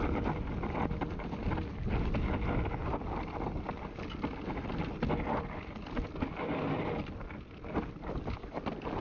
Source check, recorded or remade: recorded